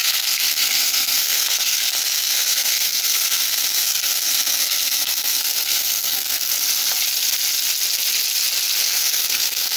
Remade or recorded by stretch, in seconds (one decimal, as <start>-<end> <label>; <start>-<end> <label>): 0.0-6.5 remade; 6.5-8.8 recorded; 8.8-9.8 remade